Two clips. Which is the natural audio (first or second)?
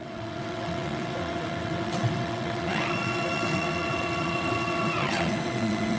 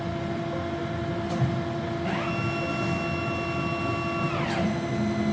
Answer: second